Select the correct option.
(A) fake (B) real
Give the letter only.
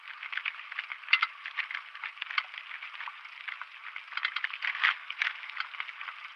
B